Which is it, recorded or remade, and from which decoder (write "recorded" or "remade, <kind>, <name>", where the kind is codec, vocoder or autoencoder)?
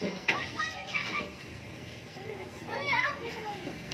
remade, codec, SNAC